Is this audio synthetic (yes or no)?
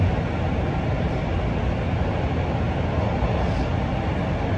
no